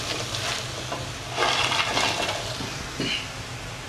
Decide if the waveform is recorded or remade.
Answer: recorded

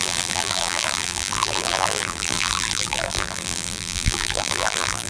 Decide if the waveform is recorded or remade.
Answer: remade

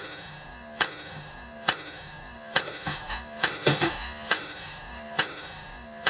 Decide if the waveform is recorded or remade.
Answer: remade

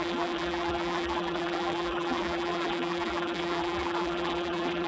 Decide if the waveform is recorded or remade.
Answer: remade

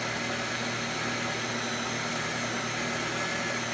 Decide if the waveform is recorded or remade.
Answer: recorded